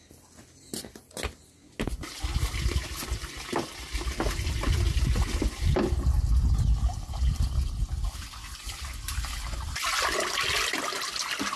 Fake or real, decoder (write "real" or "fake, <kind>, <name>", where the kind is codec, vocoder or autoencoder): real